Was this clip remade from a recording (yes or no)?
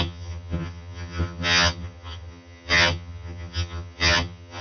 yes